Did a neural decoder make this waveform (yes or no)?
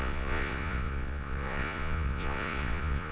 yes